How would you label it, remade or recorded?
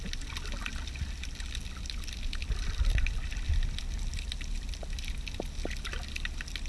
recorded